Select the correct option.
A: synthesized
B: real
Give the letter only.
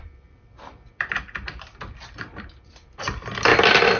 A